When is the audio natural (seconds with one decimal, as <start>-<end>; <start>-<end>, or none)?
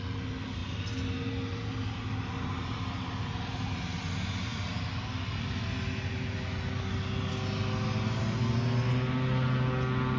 0.0-10.2